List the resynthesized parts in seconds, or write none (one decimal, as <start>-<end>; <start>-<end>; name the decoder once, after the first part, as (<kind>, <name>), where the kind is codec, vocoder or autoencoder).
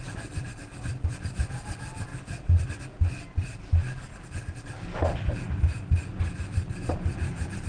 none